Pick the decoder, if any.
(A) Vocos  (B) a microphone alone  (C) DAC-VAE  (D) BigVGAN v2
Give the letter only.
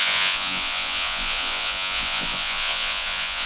A